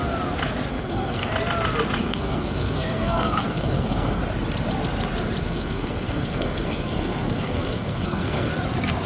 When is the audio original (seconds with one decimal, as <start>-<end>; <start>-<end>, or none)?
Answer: 0.0-0.7; 1.3-2.0; 4.2-5.4; 8.5-9.1